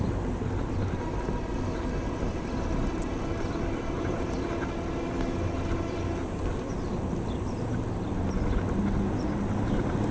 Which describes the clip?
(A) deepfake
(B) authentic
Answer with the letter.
B